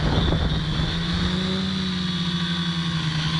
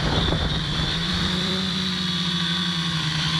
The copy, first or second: second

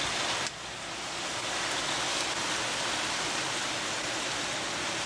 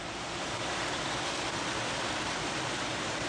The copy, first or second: second